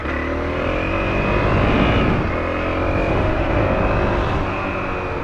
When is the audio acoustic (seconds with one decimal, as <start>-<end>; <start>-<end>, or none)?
0.0-3.1; 3.6-5.2